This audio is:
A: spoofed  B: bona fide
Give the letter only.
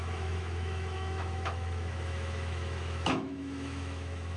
A